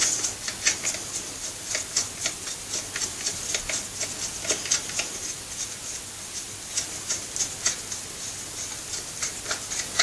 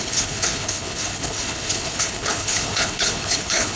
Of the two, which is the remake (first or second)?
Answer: second